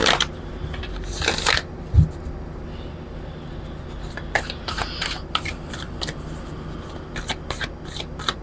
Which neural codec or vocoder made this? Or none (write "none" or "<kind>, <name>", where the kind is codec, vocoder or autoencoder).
none